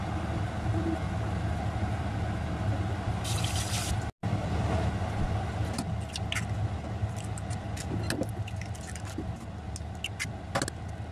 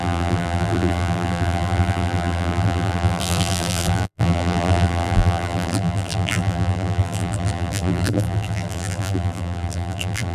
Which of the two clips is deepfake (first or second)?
second